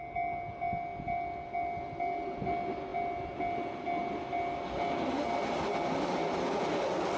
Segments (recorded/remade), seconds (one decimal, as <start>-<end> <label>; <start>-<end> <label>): 0.0-7.2 recorded